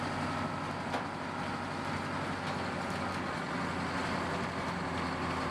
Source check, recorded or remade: recorded